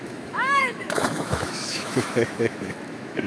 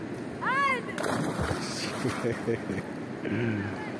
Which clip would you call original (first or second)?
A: second